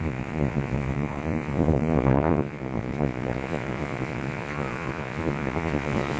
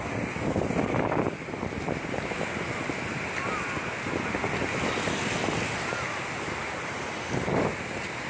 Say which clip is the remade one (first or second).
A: first